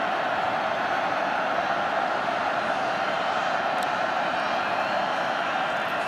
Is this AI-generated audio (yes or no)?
no